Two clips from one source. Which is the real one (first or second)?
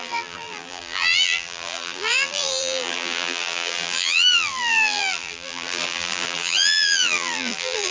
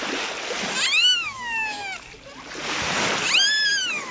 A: second